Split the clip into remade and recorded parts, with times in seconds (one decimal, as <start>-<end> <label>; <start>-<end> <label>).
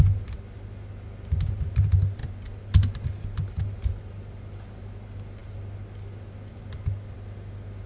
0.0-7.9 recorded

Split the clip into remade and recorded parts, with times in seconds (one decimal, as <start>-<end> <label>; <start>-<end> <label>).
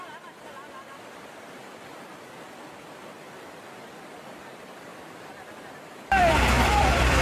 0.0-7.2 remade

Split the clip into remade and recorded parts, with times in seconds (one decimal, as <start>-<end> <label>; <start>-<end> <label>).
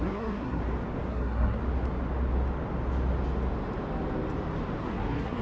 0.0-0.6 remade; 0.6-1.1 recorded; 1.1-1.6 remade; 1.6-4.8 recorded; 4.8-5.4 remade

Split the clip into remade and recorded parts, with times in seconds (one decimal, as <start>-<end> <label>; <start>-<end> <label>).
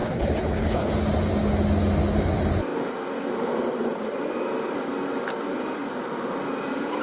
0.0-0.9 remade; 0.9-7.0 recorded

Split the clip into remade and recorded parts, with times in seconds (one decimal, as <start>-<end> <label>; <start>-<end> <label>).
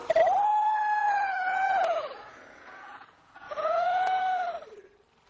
0.0-1.0 recorded; 1.0-4.2 remade; 4.2-5.3 recorded